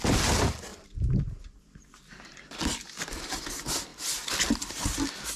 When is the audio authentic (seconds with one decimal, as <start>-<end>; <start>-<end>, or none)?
0.0-0.7; 2.6-5.4